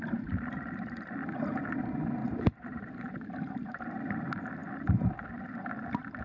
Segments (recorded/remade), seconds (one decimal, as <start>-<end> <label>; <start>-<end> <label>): 0.0-2.2 recorded; 2.2-3.3 remade; 3.3-4.6 recorded; 4.6-5.2 remade; 5.2-6.2 recorded